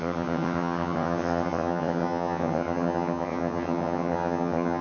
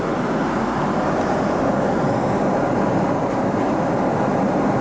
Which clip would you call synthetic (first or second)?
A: first